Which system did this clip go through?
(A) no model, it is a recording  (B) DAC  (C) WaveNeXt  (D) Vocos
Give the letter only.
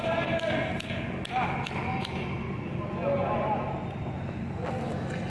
A